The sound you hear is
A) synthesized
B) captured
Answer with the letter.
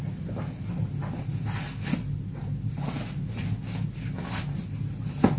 B